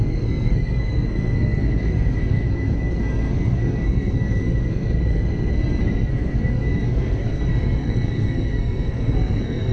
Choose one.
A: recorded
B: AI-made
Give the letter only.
B